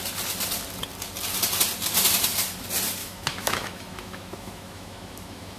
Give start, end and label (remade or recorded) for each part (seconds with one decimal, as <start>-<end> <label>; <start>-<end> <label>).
0.0-3.0 recorded; 3.0-5.6 remade